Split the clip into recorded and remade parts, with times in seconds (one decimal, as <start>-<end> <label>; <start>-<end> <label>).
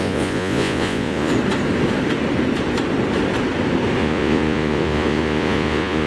0.0-1.3 remade; 1.3-4.0 recorded; 4.0-6.1 remade